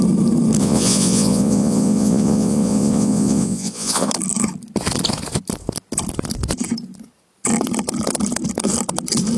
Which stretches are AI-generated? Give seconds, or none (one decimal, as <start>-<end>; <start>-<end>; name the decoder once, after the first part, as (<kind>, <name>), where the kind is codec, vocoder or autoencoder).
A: 0.6-4.1 (vocoder, Vocos)